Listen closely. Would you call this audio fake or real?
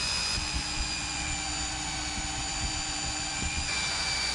fake